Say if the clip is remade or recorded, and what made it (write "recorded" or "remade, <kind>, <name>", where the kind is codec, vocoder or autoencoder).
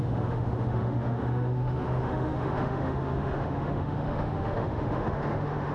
remade, autoencoder, DAC-VAE